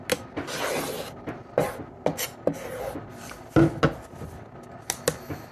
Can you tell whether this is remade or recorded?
recorded